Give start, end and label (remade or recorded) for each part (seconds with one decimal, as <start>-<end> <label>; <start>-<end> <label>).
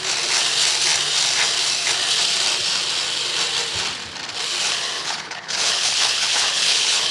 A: 0.0-5.0 recorded; 5.0-7.1 remade